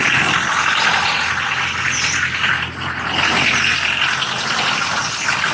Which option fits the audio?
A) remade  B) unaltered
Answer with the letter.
B